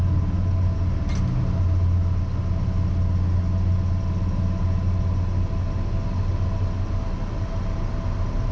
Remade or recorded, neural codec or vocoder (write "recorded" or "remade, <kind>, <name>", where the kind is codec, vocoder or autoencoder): recorded